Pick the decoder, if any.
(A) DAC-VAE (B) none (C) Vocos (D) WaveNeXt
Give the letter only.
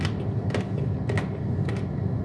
B